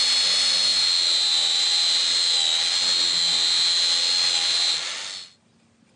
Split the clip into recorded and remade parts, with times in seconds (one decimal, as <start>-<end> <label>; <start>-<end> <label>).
0.0-6.0 recorded